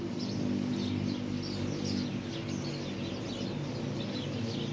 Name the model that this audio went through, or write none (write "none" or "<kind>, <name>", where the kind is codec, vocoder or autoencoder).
none